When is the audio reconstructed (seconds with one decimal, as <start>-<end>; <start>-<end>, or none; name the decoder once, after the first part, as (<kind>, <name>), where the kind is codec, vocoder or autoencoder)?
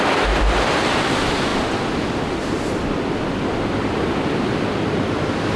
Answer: 0.0-1.5 (vocoder, BigVGAN v2); 4.4-5.6